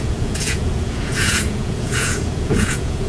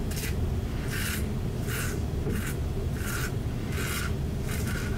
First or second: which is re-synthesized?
first